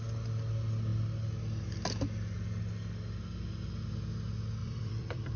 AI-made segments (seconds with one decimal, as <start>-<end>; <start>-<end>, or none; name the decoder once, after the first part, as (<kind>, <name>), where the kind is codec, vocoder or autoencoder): 4.6-5.4 (vocoder, BigVGAN v2)